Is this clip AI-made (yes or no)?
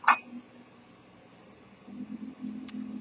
no